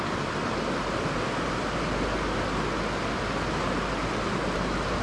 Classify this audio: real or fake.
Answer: real